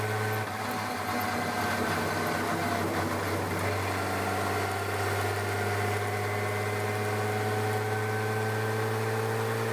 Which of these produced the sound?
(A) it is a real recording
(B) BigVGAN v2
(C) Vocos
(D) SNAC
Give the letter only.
A